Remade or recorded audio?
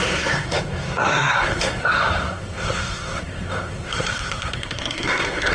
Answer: remade